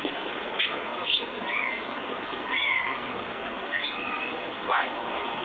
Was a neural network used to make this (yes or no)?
yes